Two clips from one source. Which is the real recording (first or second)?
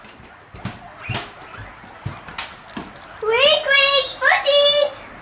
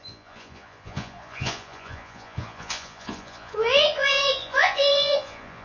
first